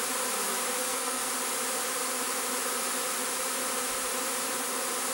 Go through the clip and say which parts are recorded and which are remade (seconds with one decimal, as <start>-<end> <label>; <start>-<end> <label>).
0.0-0.8 recorded; 0.8-1.3 remade; 1.3-5.1 recorded